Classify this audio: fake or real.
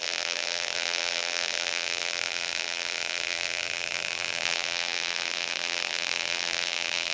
fake